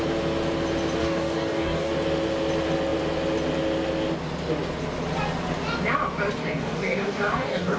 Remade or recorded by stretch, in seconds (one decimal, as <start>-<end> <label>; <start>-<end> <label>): 0.0-1.0 recorded; 1.0-1.9 remade; 1.9-6.4 recorded; 6.4-7.8 remade